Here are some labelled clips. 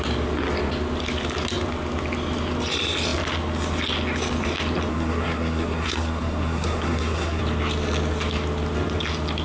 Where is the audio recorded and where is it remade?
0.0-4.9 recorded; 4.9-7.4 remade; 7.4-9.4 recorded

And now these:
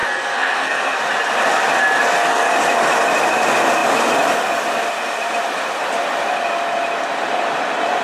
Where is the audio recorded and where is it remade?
0.0-1.0 remade; 1.0-2.0 recorded; 2.0-2.5 remade; 2.5-8.0 recorded